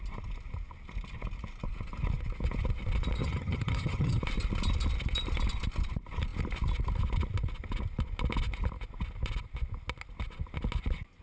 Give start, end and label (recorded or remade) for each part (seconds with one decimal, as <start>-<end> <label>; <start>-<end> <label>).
0.0-3.2 recorded; 3.2-4.2 remade; 4.2-11.2 recorded